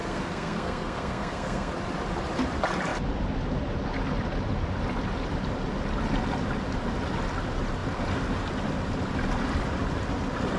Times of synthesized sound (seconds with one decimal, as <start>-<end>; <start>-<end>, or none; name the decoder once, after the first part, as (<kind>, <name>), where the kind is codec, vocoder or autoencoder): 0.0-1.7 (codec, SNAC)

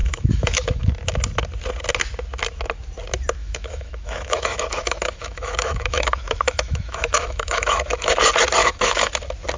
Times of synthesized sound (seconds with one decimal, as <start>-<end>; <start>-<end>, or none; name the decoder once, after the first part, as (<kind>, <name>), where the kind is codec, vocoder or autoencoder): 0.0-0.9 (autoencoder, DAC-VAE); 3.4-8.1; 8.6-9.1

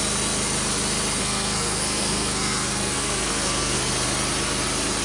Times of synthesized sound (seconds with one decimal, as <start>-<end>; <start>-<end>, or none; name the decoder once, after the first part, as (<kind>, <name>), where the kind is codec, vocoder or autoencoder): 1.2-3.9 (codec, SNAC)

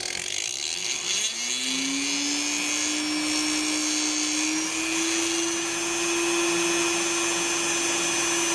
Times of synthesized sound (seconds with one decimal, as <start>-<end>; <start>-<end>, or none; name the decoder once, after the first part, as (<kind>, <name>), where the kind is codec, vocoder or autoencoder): none